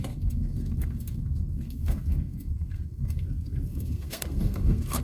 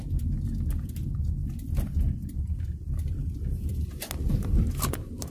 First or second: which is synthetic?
first